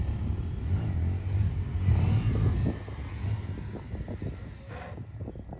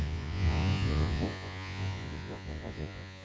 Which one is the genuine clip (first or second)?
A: first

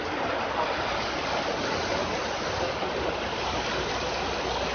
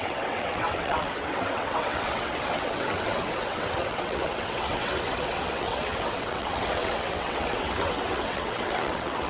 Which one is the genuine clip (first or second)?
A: first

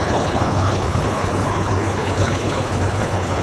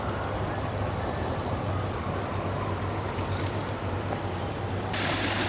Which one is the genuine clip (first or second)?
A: second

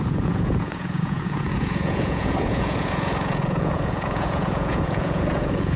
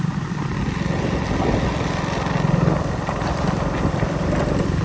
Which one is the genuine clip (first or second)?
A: second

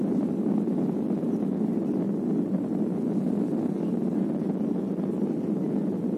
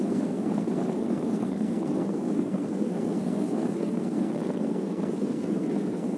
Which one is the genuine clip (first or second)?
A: first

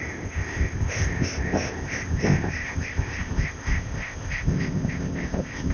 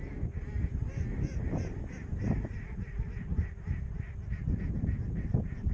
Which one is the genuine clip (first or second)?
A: second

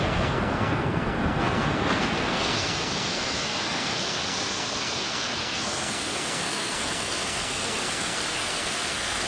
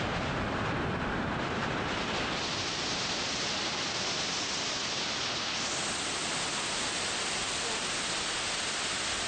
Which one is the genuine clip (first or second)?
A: second